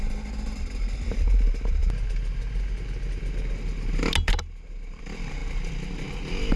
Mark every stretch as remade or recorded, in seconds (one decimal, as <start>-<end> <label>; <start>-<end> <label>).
0.0-6.6 recorded